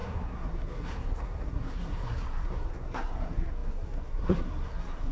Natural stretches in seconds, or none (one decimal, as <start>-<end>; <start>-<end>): none